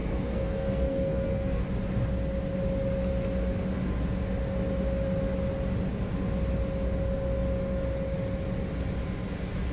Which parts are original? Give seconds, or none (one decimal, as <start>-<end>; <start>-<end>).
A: 1.6-9.7